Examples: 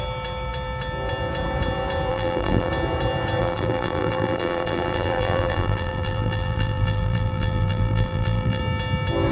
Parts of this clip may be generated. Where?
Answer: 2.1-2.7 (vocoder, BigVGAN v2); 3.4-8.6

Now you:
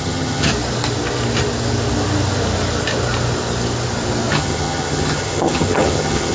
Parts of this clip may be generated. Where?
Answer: 0.0-0.5 (vocoder, HiFi-GAN); 4.3-6.3

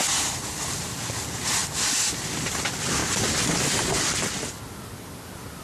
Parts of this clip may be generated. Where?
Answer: none

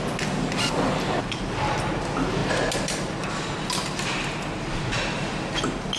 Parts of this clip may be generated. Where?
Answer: none

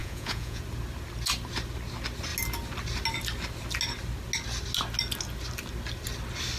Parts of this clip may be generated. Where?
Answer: 0.0-0.6 (vocoder, Vocos)